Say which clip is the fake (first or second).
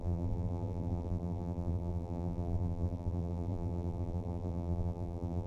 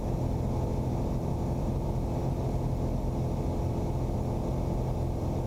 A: first